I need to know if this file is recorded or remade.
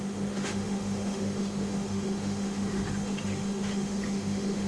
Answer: remade